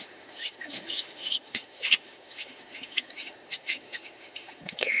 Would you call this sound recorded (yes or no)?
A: no